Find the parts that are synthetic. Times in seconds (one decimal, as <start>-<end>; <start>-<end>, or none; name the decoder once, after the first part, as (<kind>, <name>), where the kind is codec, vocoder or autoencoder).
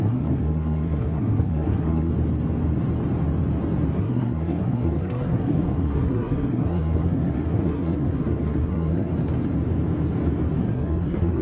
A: 0.0-2.1 (codec, SNAC); 4.0-9.1; 10.6-11.4